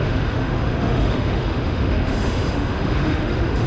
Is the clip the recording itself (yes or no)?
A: no